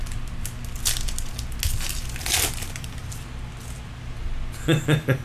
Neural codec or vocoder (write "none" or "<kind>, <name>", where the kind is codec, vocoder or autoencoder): none